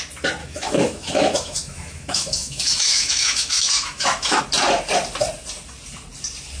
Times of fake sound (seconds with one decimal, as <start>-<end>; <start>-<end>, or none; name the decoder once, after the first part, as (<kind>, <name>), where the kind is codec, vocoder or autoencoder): 0.4-4.4 (autoencoder, DAC-VAE)